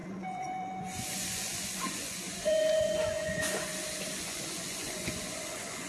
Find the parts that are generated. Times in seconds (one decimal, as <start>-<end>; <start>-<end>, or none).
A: 0.0-3.7; 4.2-5.9